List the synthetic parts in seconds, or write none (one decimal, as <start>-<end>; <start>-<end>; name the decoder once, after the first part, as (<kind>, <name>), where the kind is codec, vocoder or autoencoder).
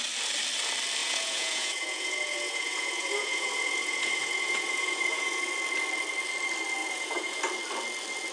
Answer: 1.0-5.5 (vocoder, Vocos); 6.8-7.4